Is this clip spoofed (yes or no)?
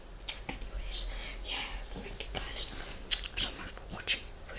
no